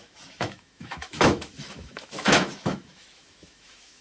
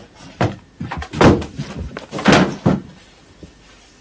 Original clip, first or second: second